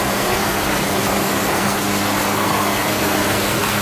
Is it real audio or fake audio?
fake